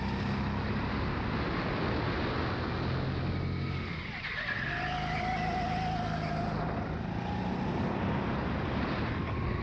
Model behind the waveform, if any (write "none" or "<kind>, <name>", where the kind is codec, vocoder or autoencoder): none